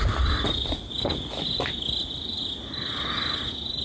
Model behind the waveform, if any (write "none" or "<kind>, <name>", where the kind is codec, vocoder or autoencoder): none